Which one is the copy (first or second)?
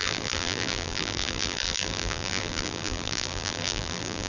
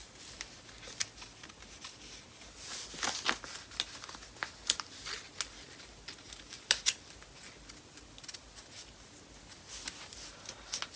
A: first